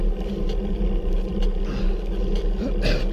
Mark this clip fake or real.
real